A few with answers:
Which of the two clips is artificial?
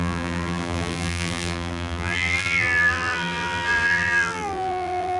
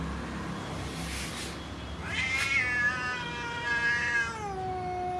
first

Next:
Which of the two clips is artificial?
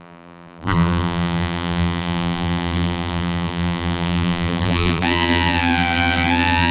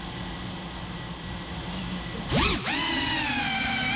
first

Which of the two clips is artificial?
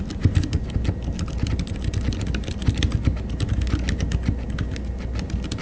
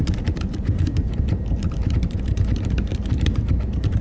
second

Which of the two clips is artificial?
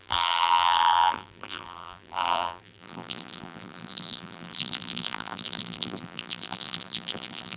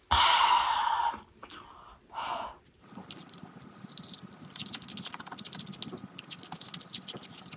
first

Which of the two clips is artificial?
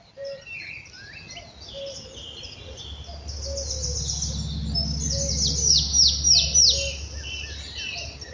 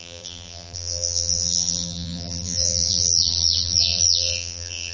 second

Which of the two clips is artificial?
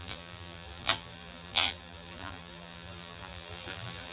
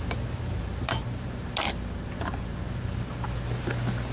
first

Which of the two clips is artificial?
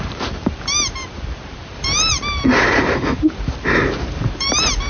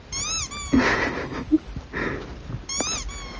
first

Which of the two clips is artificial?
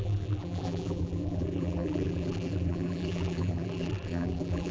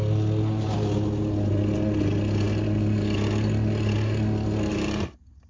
first